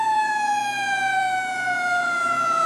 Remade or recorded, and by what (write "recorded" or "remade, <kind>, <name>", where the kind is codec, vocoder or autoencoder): remade, vocoder, Vocos